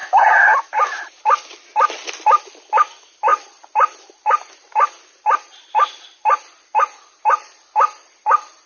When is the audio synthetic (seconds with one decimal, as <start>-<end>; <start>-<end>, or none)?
3.3-5.7